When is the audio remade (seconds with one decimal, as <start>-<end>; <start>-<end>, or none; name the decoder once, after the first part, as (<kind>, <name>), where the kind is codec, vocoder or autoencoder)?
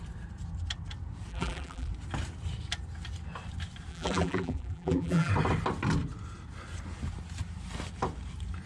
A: 1.3-1.9 (vocoder, BigVGAN v2); 3.9-5.3